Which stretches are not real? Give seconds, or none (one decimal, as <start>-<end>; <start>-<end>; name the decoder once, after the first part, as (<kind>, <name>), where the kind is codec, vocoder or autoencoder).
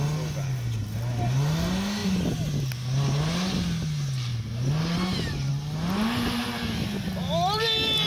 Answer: none